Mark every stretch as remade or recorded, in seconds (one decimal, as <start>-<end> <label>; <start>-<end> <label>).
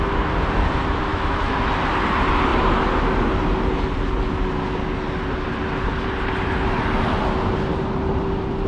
0.0-1.1 recorded; 1.1-1.7 remade; 1.7-8.7 recorded